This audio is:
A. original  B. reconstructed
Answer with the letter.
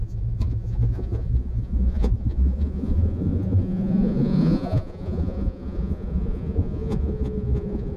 B